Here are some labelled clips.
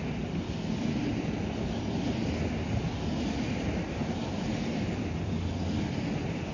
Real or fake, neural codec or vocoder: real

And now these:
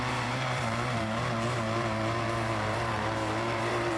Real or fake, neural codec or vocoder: fake, vocoder, BigVGAN v2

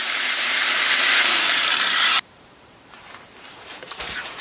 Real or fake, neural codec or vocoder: fake, vocoder, BigVGAN v2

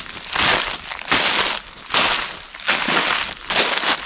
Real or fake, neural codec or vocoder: real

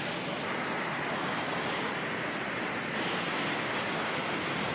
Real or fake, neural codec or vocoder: real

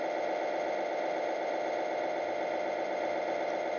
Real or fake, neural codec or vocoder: fake, vocoder, BigVGAN v2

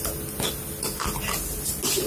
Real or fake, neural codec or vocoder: real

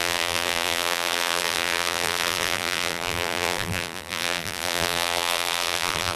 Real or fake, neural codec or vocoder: fake, vocoder, BigVGAN v2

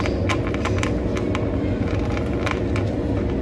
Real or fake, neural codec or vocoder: real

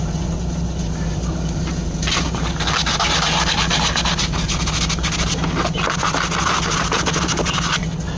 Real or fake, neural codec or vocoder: real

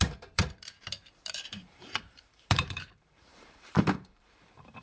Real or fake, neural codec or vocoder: fake, vocoder, BigVGAN v2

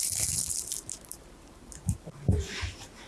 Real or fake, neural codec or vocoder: fake, vocoder, BigVGAN v2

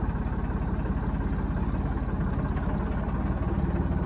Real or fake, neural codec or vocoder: real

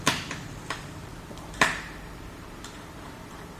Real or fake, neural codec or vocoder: fake, vocoder, BigVGAN v2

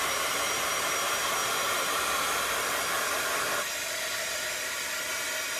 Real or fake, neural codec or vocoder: fake, vocoder, BigVGAN v2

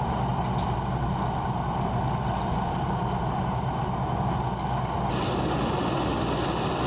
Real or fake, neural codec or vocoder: real